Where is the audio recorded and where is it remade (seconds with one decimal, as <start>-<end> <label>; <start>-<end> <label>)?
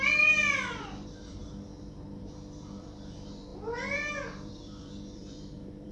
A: 0.0-1.4 remade; 1.4-2.2 recorded; 2.2-3.5 remade; 3.5-4.5 recorded; 4.5-5.9 remade